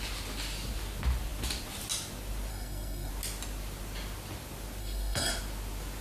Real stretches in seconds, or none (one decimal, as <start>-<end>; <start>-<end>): 0.0-2.5; 3.1-4.8; 5.3-6.0